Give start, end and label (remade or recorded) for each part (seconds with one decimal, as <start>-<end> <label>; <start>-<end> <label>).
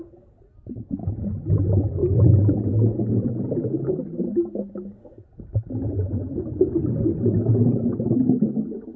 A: 0.0-1.0 remade; 1.0-1.6 recorded; 1.6-2.0 remade; 2.0-3.1 recorded; 3.1-6.8 remade; 6.8-7.5 recorded; 7.5-9.0 remade